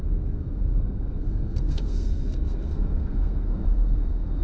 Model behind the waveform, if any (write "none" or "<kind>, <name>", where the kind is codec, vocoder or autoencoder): codec, SNAC